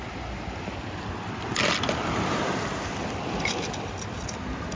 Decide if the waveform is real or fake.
real